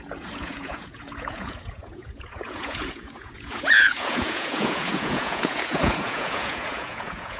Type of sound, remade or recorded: remade